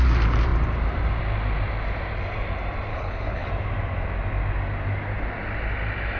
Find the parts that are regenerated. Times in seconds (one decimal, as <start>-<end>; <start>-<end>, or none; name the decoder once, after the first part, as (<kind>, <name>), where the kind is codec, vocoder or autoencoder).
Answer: 2.9-3.5 (codec, HILCodec)